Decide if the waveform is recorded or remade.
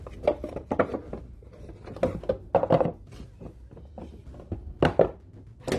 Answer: recorded